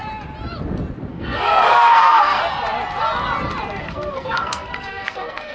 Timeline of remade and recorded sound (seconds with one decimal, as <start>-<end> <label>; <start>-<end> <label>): 0.0-1.1 recorded; 1.1-2.4 remade; 2.4-3.8 recorded; 3.8-5.5 remade